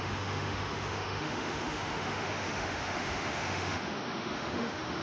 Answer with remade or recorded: remade